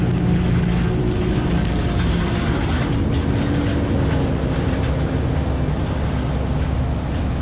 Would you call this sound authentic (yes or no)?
yes